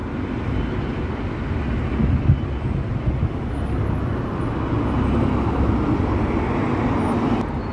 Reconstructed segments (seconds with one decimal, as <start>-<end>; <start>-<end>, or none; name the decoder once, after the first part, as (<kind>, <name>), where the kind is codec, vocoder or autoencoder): none